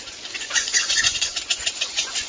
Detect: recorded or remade remade